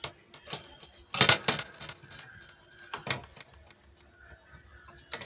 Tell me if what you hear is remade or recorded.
recorded